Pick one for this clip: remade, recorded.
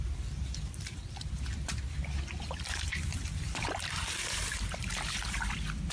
remade